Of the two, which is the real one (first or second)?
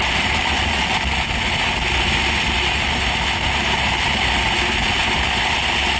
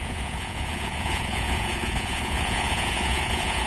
first